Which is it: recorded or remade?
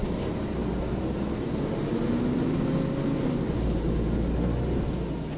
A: recorded